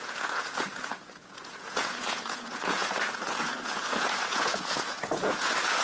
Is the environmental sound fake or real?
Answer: fake